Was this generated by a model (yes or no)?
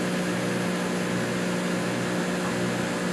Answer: no